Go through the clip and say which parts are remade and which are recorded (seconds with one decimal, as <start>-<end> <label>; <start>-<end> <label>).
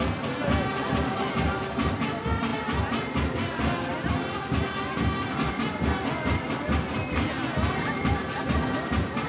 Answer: 0.0-9.3 recorded